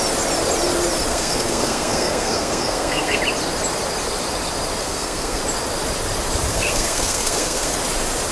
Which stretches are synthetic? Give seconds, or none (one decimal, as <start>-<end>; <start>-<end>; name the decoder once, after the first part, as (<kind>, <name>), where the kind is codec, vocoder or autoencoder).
1.1-3.2 (codec, SNAC); 4.8-5.4; 6.5-7.7